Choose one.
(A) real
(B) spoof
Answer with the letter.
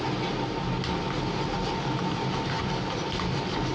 A